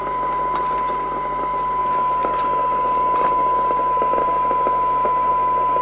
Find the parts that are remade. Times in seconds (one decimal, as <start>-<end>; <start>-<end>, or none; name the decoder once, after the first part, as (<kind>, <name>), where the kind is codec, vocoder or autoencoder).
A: none